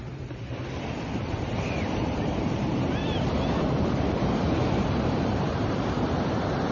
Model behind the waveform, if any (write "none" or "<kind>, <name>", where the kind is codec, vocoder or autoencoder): vocoder, BigVGAN v2